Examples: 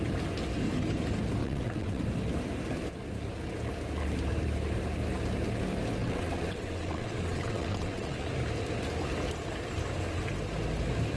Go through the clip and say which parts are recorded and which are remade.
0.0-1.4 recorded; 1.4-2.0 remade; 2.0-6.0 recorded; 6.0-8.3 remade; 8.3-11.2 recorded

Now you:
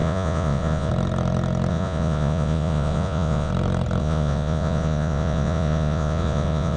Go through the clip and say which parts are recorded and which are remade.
0.0-0.9 remade; 0.9-1.7 recorded; 1.7-3.5 remade; 3.5-4.0 recorded; 4.0-6.8 remade

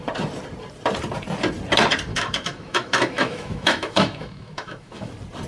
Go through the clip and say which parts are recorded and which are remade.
0.0-2.1 recorded; 2.1-5.1 remade; 5.1-5.5 recorded

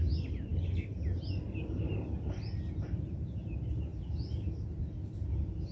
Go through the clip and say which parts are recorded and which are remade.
0.0-5.7 recorded

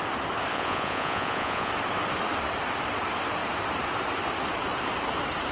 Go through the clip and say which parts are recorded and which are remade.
0.0-0.5 recorded; 0.5-1.7 remade; 1.7-5.5 recorded

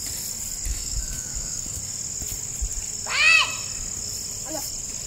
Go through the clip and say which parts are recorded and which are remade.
0.0-0.7 recorded; 0.7-1.8 remade; 1.8-5.1 recorded